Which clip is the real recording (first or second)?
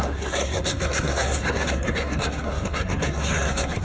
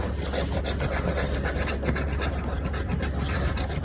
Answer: second